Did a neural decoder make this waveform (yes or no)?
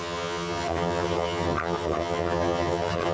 yes